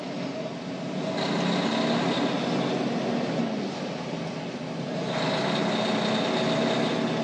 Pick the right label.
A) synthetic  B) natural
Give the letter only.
B